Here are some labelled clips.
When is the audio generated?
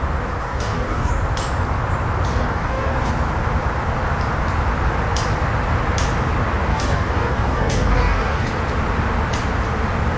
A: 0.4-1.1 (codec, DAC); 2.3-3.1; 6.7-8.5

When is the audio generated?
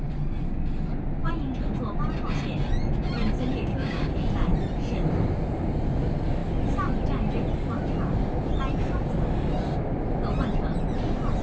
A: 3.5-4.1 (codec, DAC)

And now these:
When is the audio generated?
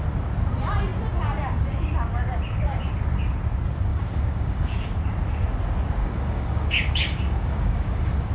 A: 3.9-5.0 (codec, DAC); 6.0-8.3